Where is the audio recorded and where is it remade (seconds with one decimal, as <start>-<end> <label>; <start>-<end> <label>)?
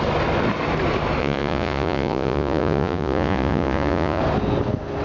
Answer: 0.0-1.2 recorded; 1.2-4.2 remade; 4.2-5.0 recorded